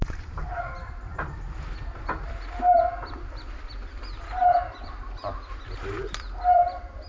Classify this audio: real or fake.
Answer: real